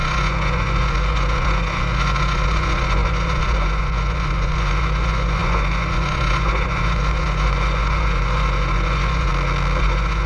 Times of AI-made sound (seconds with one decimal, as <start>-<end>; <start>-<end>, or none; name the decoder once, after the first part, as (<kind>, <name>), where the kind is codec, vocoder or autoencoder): 0.0-9.3 (vocoder, Vocos); 9.8-10.3